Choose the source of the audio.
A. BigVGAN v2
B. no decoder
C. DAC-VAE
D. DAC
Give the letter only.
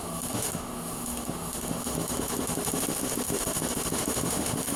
C